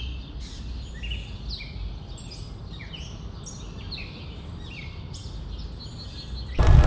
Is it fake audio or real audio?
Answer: real